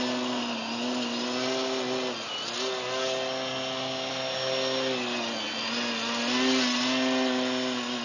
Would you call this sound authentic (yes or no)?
yes